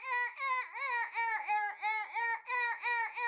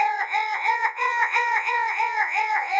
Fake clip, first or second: second